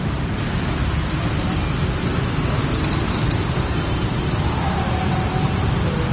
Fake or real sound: real